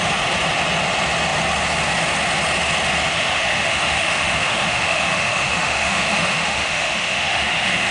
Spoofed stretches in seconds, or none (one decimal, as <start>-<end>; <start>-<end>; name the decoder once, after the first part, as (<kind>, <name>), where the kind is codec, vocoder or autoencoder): 3.1-7.9 (autoencoder, DAC-VAE)